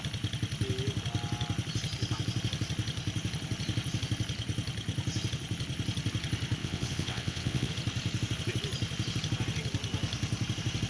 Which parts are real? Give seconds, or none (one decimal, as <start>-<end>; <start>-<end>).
0.0-6.6; 7.7-10.9